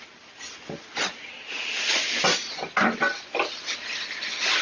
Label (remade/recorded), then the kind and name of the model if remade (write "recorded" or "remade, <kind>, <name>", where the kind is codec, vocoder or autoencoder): recorded